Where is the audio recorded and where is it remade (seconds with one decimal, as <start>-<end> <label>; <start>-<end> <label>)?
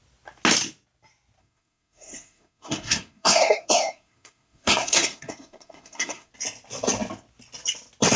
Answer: 0.0-1.4 recorded; 1.4-6.3 remade; 6.3-8.2 recorded